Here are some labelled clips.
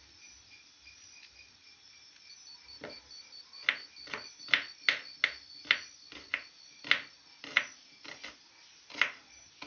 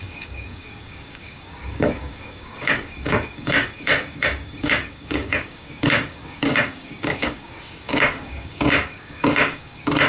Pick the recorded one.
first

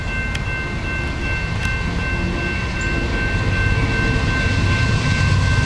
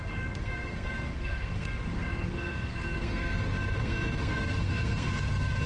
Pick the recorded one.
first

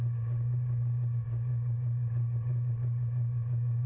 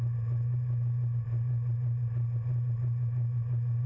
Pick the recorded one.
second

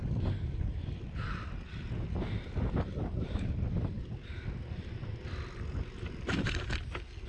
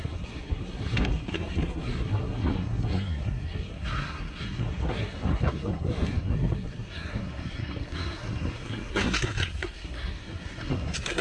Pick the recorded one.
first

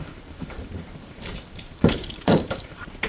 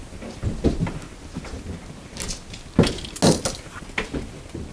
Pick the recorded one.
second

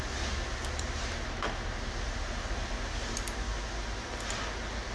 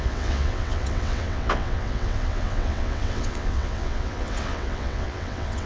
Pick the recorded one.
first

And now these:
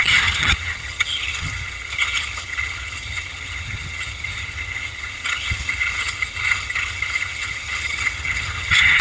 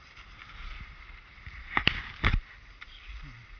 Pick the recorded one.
second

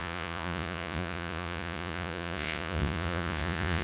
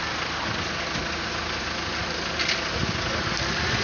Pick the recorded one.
second